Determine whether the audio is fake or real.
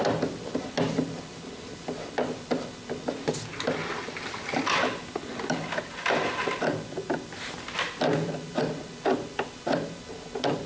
real